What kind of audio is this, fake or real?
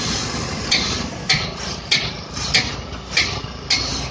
real